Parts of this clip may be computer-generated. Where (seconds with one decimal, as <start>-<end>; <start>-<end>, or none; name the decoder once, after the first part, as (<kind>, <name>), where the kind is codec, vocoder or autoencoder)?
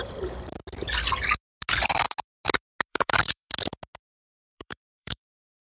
2.9-3.5 (autoencoder, DAC-VAE); 4.3-5.6